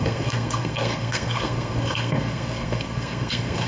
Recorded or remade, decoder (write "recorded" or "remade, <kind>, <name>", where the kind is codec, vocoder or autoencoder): remade, codec, SNAC